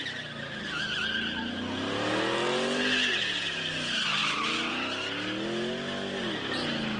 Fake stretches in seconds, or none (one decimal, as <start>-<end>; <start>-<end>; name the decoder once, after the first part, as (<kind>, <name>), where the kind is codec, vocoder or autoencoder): none